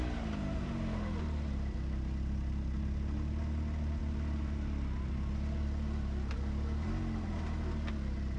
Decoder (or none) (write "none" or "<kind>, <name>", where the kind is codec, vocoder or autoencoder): none